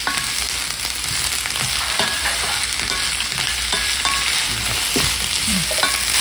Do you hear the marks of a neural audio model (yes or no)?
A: no